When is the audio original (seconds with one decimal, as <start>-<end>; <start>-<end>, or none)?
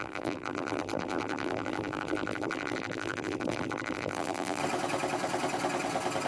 4.6-6.3